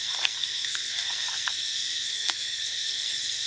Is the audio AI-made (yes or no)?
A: yes